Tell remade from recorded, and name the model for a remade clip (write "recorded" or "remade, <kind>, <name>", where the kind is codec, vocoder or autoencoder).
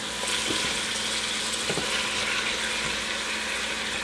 recorded